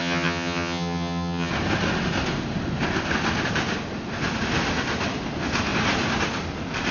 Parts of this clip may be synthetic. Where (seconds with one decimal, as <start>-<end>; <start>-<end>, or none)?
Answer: 0.0-1.5